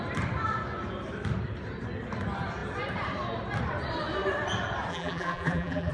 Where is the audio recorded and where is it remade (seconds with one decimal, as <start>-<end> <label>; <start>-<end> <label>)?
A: 0.0-4.9 recorded; 4.9-5.9 remade